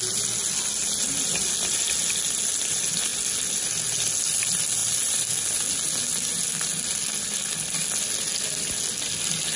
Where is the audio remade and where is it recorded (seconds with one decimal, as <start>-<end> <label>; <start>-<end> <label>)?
0.0-9.6 recorded